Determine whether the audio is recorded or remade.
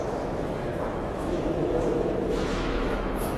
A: remade